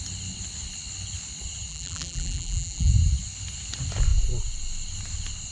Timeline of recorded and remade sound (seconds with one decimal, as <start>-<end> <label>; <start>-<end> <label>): 0.0-1.7 recorded; 1.7-2.9 remade; 2.9-5.5 recorded